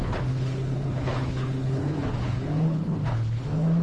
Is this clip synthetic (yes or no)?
yes